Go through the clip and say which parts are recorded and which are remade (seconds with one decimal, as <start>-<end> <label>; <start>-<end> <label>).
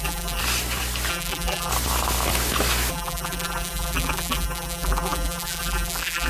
0.0-0.4 remade; 0.4-1.1 recorded; 1.1-1.7 remade; 1.7-2.9 recorded; 2.9-6.3 remade